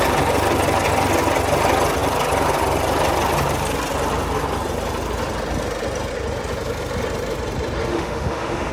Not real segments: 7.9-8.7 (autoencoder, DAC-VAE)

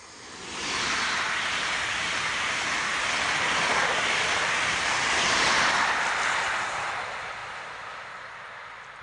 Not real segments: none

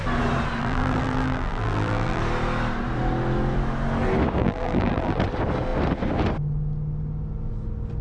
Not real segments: 0.6-2.2 (vocoder, BigVGAN v2); 4.4-5.2